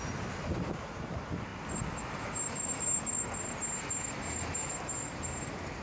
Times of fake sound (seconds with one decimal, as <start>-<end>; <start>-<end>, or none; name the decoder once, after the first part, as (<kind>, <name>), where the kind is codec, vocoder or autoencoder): none